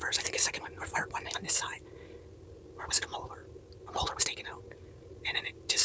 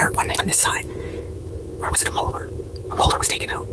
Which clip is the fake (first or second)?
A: second